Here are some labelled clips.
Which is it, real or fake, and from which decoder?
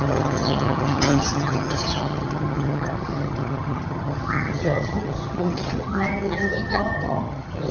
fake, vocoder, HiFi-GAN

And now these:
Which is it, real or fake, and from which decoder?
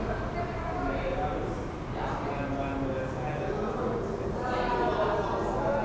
real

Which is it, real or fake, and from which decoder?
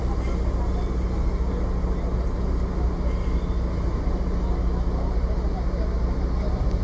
real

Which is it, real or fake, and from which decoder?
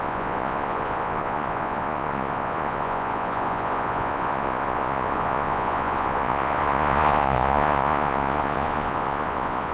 fake, vocoder, Vocos